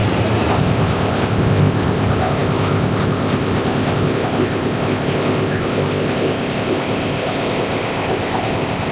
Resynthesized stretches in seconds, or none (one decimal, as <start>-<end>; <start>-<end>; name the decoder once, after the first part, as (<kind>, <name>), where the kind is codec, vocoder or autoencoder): 0.5-8.9 (codec, ZipCodec)